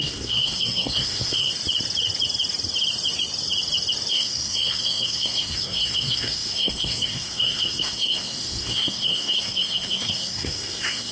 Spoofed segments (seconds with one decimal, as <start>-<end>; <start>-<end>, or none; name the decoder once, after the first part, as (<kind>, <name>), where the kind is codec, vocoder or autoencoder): 0.0-1.5 (codec, SNAC); 4.1-11.1